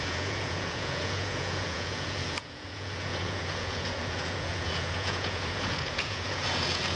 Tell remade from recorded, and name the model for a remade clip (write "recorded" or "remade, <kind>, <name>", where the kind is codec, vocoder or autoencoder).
remade, vocoder, Vocos